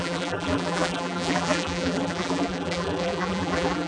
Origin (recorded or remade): remade